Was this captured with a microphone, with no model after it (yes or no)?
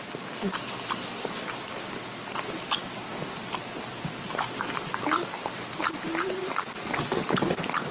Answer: yes